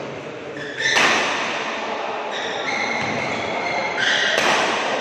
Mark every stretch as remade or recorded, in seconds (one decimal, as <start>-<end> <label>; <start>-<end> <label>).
0.0-3.8 recorded; 3.8-5.0 remade